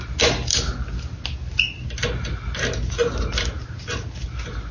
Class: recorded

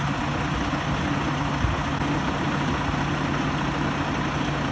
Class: recorded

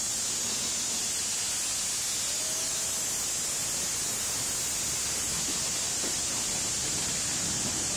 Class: recorded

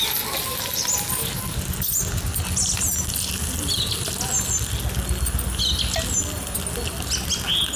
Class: recorded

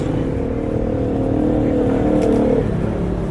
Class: recorded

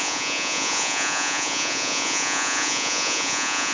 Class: remade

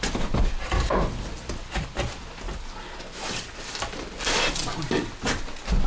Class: recorded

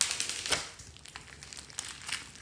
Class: recorded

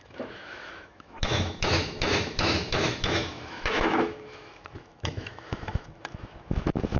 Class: remade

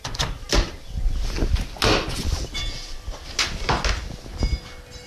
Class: recorded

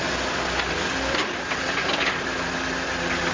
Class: remade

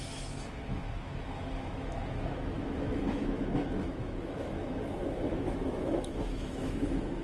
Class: remade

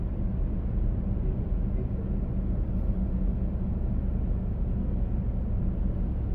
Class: recorded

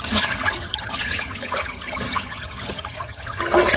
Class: remade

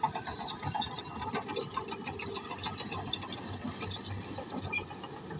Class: recorded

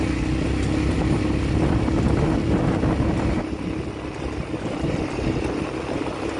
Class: recorded